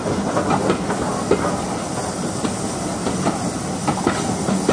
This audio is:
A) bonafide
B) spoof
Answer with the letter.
A